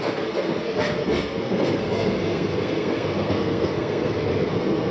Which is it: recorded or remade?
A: remade